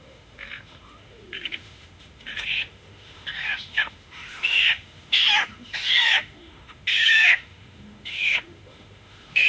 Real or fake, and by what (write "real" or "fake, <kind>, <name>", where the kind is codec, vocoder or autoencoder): fake, autoencoder, DAC-VAE